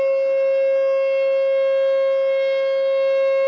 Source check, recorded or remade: recorded